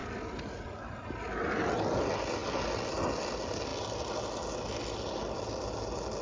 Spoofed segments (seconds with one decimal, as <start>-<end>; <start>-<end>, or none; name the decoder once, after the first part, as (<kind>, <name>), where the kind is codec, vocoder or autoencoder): 0.0-0.9 (vocoder, BigVGAN v2)